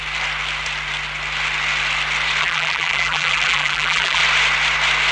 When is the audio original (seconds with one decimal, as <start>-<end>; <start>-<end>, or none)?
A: 0.0-2.4; 4.2-5.1